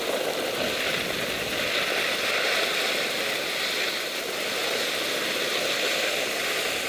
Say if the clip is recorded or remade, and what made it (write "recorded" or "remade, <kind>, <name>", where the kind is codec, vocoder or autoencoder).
recorded